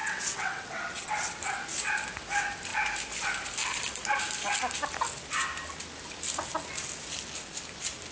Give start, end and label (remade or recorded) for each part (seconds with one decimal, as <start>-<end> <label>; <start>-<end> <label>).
0.0-1.4 remade; 1.4-8.1 recorded